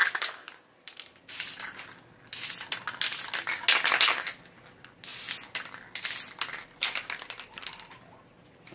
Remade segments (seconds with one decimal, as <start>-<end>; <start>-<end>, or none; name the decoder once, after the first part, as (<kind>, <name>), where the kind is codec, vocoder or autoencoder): none